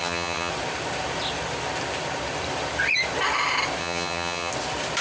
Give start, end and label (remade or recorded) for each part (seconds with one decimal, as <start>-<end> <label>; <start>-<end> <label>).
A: 0.0-0.5 remade; 0.5-3.8 recorded; 3.8-4.5 remade; 4.5-5.0 recorded

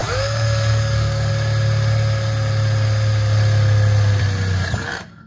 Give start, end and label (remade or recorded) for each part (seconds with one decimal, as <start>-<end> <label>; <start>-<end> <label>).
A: 0.0-1.3 remade; 1.3-5.3 recorded

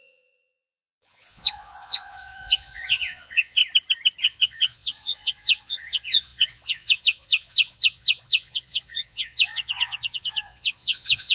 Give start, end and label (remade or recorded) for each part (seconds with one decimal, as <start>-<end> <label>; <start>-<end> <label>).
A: 0.0-3.6 remade; 3.6-4.2 recorded; 4.2-11.3 remade

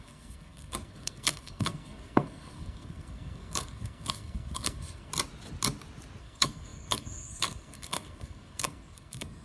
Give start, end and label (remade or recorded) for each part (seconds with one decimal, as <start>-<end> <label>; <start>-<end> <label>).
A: 0.0-5.1 remade; 5.1-6.2 recorded; 6.2-9.4 remade